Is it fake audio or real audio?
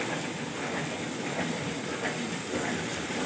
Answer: real